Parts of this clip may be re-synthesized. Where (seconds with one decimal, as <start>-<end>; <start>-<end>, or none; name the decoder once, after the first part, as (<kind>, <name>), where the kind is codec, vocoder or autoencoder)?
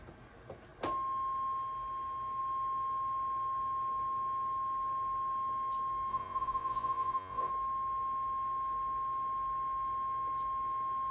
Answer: 6.1-7.5 (vocoder, Vocos)